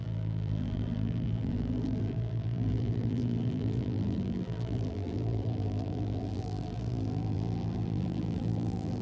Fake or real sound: fake